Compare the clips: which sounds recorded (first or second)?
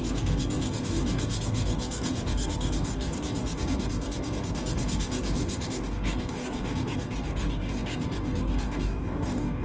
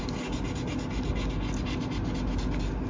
second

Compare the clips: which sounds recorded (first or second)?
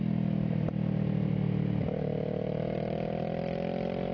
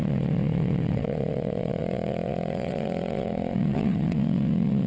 first